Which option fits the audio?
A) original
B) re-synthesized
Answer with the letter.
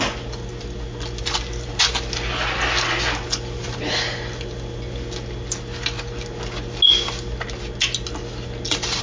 A